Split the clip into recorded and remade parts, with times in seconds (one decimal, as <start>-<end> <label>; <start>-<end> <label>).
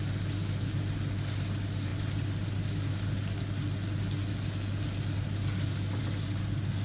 0.0-6.8 recorded